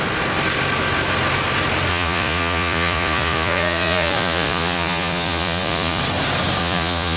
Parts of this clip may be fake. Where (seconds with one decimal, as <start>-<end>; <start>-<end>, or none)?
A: 1.9-6.0; 6.6-7.2